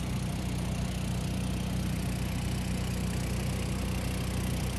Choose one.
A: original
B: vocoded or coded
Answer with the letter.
A